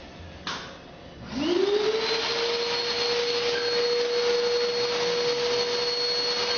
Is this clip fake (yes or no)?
no